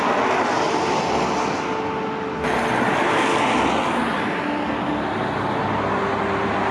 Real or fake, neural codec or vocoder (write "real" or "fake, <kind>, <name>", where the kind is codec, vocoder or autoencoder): real